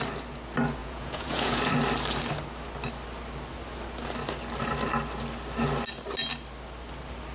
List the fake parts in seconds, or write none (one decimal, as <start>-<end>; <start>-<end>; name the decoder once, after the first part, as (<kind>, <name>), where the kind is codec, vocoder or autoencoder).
0.8-1.6 (vocoder, Vocos)